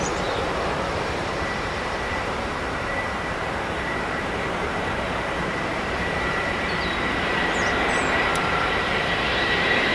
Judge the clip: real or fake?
fake